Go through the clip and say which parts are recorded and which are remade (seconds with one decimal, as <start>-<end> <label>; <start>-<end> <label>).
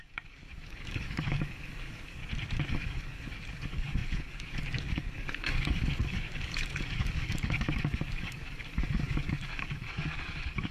0.0-2.2 remade; 2.2-2.7 recorded; 2.7-10.7 remade